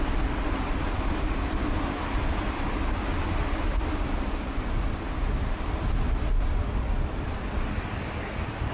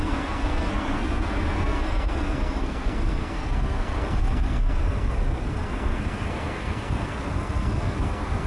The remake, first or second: second